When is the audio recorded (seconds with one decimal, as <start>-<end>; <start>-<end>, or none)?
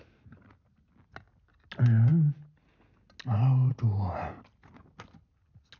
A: 0.0-5.8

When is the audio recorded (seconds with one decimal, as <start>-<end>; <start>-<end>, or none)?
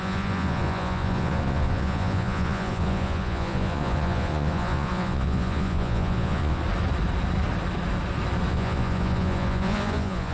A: 6.6-8.5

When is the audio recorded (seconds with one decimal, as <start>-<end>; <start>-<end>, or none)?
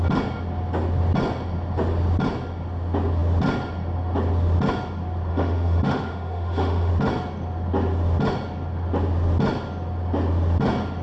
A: 0.0-5.3; 6.9-11.0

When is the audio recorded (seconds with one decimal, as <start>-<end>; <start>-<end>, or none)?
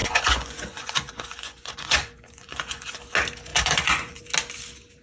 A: 3.0-3.5; 4.2-5.0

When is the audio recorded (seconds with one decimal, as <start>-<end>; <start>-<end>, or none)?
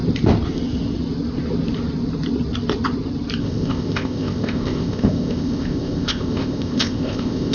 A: 0.0-3.4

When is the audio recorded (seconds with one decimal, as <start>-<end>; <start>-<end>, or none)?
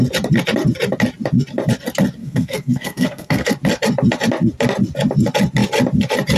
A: 0.0-2.2; 3.5-6.4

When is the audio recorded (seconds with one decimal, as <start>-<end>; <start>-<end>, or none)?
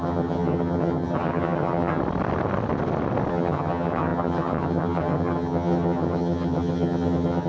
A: 2.0-3.3